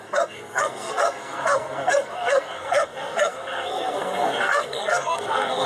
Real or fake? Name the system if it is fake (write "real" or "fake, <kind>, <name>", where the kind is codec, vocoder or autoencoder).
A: fake, codec, SNAC